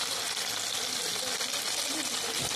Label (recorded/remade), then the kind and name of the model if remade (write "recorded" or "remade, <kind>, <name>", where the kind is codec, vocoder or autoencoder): recorded